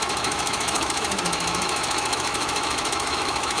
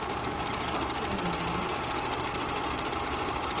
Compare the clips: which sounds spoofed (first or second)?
first